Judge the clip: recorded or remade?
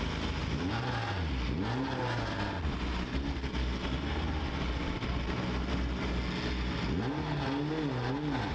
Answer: recorded